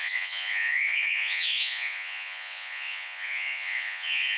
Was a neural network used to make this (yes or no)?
yes